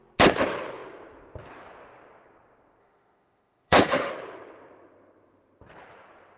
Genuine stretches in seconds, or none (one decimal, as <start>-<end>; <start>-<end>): 0.0-2.8; 4.1-6.4